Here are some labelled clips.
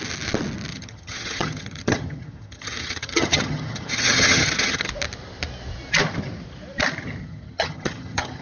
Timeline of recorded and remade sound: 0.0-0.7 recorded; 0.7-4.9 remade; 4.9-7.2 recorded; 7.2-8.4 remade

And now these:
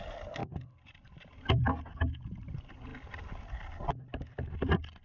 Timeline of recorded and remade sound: 0.0-5.0 recorded

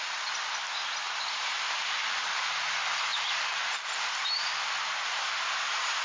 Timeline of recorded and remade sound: 0.0-6.0 recorded

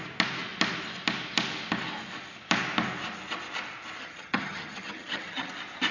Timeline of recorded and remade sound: 0.0-4.0 recorded; 4.0-5.5 remade; 5.5-5.9 recorded